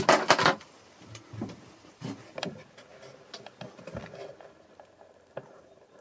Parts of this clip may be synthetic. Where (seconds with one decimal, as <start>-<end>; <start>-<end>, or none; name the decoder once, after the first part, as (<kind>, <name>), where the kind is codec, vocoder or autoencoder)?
0.0-2.9 (vocoder, BigVGAN v2); 5.3-6.0